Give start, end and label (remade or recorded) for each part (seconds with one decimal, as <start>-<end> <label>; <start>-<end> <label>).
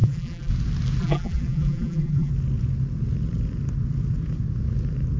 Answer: 0.0-0.5 remade; 0.5-1.0 recorded; 1.0-2.3 remade; 2.3-5.2 recorded